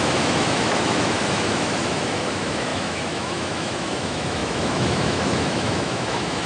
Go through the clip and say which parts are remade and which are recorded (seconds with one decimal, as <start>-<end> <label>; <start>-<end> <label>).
0.0-6.5 remade